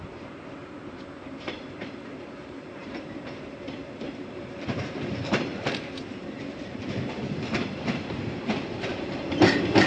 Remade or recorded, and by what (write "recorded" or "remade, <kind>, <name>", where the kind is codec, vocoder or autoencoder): remade, vocoder, BigVGAN v2